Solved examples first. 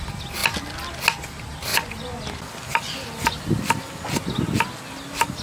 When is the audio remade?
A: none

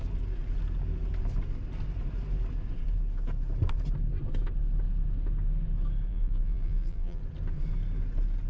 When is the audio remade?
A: 6.1-7.2 (vocoder, BigVGAN v2)

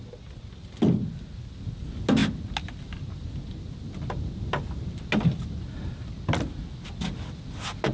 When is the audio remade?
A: none

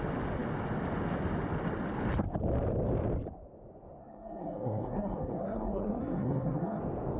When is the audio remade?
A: 4.0-6.8 (codec, SNAC)

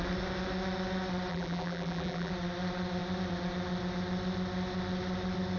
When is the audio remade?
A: 1.3-2.3 (vocoder, BigVGAN v2)

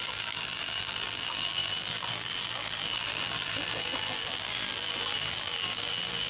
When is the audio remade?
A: 0.0-6.3 (vocoder, BigVGAN v2)

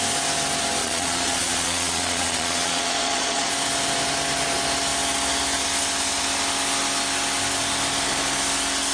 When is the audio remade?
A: 0.8-3.5 (vocoder, Vocos)